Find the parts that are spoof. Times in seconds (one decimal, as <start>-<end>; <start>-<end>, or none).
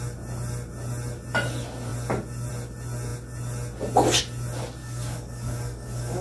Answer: 4.8-6.2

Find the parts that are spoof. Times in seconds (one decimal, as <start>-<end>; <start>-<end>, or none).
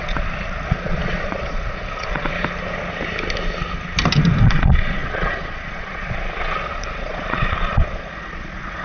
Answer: 0.0-2.3; 4.4-8.8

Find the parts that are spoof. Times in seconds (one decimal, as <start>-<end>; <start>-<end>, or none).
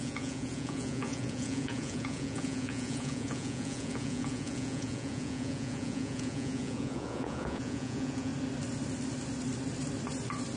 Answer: 0.0-8.3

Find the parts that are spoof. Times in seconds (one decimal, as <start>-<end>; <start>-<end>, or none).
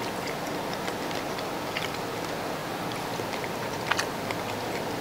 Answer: none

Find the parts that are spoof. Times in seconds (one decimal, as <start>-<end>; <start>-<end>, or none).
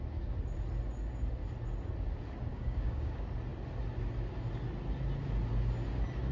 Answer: 2.5-3.1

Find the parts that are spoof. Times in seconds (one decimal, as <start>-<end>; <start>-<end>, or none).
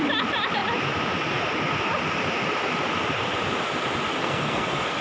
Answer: 4.2-5.0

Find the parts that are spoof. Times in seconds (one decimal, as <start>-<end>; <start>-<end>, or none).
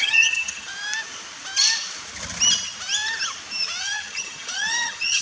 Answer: 0.0-0.7; 3.8-5.2